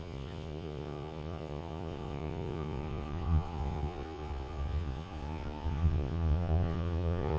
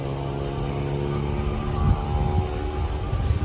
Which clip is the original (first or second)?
second